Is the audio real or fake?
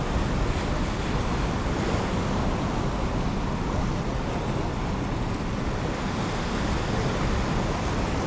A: real